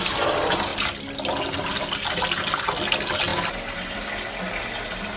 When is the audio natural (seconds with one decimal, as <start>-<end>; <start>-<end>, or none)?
0.0-5.2